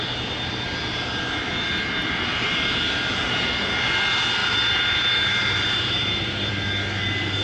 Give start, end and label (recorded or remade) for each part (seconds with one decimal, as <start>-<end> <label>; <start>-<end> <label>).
0.0-2.3 recorded; 2.3-3.6 remade; 3.6-4.4 recorded; 4.4-6.5 remade; 6.5-7.4 recorded